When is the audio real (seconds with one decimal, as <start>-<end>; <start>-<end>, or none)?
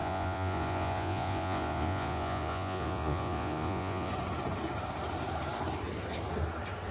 4.1-6.9